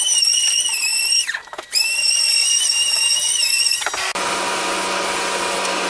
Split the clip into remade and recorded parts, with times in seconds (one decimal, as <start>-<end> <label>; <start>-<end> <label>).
0.0-0.9 recorded; 0.9-3.6 remade; 3.6-4.1 recorded; 4.1-5.9 remade